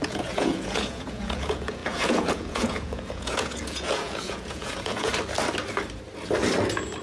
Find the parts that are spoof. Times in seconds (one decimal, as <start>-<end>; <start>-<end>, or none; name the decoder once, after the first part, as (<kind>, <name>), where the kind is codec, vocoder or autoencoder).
0.0-5.1 (vocoder, Vocos)